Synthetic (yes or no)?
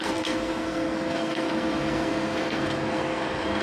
yes